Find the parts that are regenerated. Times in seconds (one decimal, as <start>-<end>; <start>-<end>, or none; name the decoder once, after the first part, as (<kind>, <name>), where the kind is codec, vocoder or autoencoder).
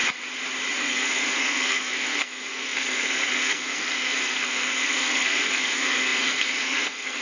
0.8-7.2 (codec, SNAC)